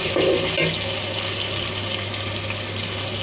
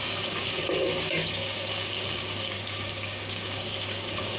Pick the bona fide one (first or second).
first